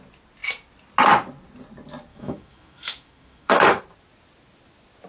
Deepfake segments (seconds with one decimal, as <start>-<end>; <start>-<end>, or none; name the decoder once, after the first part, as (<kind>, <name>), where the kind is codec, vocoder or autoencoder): 2.1-3.8 (autoencoder, DAC-VAE)